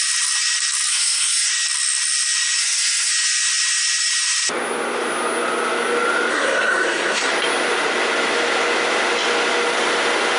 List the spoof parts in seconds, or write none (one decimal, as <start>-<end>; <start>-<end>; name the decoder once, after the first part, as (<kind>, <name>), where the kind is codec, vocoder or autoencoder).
0.9-1.5 (codec, SNAC); 2.6-3.1; 6.3-7.3